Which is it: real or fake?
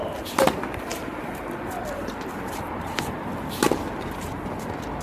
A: real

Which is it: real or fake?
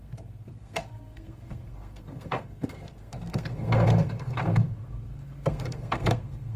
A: fake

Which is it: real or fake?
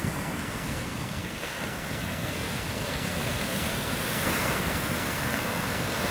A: fake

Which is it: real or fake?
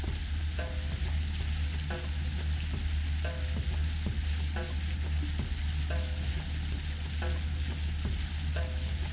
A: real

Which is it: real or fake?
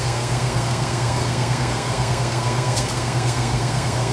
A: fake